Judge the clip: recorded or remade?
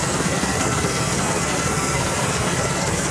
remade